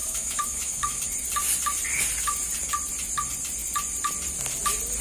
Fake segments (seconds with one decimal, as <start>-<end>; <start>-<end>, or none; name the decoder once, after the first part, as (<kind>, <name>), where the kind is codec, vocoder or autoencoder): 0.0-1.0 (autoencoder, DAC-VAE)